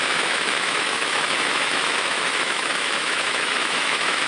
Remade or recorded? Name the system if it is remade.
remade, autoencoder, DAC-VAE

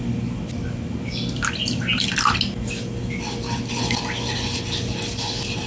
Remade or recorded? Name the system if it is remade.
recorded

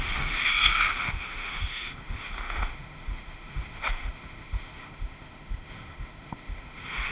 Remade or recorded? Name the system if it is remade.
remade, autoencoder, DAC-VAE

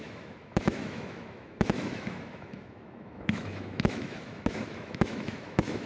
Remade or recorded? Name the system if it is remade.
remade, autoencoder, DAC-VAE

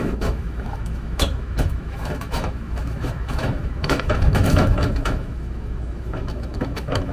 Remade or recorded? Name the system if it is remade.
remade, autoencoder, DAC-VAE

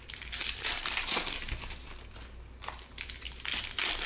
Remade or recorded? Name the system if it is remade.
recorded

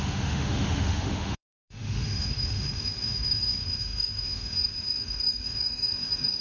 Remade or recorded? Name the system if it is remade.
remade, autoencoder, DAC-VAE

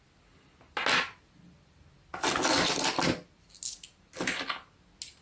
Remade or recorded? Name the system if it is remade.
recorded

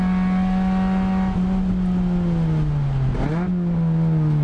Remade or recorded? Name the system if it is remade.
recorded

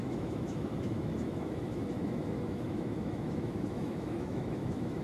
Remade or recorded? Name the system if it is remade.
remade, autoencoder, DAC-VAE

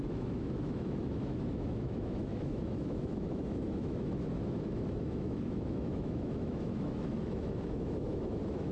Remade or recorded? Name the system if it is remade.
remade, autoencoder, DAC-VAE